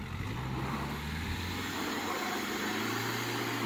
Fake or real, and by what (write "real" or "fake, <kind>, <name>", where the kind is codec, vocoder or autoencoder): real